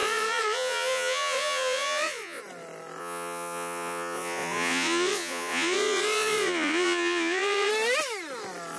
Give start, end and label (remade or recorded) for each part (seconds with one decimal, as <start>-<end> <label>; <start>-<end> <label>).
0.0-2.4 remade; 2.4-3.0 recorded; 3.0-7.7 remade; 7.7-8.8 recorded